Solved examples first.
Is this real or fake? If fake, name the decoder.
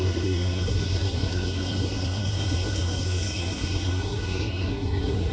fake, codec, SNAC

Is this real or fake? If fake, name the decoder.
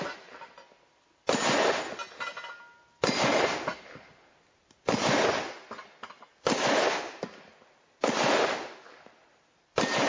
real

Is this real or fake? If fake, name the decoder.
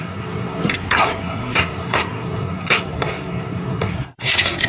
fake, codec, SNAC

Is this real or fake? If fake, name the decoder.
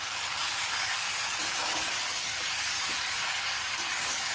fake, codec, DAC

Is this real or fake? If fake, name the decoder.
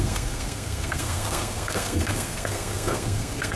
fake, codec, SNAC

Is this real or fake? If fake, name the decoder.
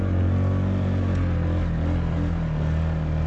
real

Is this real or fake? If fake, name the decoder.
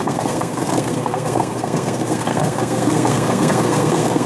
fake, codec, SNAC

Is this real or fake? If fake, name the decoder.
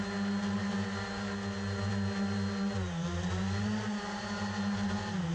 real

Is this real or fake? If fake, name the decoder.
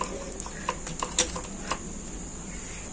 real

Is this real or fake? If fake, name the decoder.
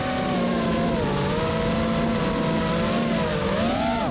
real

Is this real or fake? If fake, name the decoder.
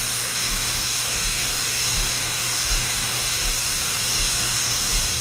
fake, codec, DAC